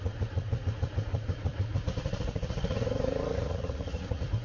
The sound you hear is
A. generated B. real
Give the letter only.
A